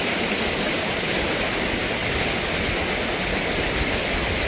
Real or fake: real